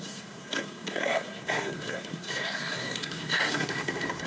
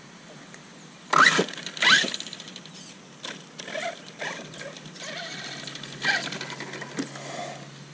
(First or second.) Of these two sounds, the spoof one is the first